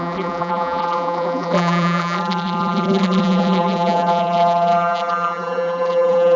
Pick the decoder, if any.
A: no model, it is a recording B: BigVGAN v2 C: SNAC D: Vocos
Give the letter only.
B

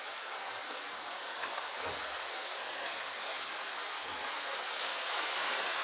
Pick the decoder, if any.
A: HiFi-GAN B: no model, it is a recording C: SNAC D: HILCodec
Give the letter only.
C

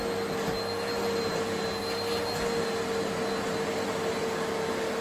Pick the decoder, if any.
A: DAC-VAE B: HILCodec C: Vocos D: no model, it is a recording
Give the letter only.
D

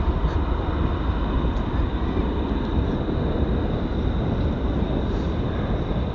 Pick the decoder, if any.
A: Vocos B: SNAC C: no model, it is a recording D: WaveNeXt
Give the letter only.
C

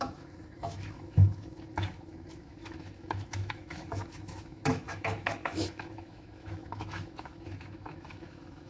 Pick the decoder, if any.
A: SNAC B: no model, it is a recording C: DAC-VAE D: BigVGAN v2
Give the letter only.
C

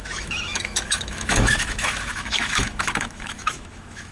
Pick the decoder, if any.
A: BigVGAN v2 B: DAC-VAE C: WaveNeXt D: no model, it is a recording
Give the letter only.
B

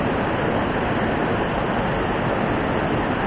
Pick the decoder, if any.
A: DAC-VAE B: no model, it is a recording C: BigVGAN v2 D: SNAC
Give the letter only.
B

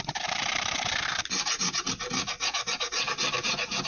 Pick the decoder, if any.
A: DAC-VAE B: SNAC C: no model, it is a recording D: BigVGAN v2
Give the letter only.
D